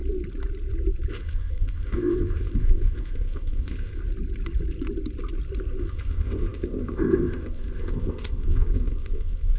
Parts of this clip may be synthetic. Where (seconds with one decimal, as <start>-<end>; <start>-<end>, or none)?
1.1-4.0; 5.8-9.6